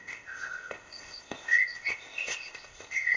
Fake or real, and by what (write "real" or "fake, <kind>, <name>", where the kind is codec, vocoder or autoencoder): fake, codec, ZipCodec